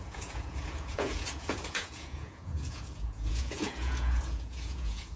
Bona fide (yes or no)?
no